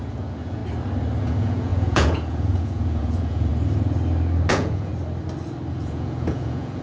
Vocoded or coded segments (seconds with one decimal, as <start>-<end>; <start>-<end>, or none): 0.0-0.6; 1.2-3.5; 4.5-4.9; 5.7-6.8